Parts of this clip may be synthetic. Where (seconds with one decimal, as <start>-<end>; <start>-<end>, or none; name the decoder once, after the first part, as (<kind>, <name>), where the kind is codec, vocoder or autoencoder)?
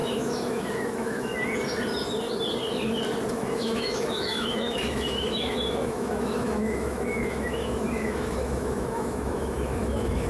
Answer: 0.0-1.3 (autoencoder, DAC-VAE); 3.3-10.3